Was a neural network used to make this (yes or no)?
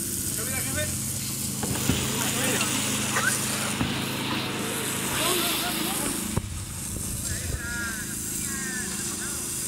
no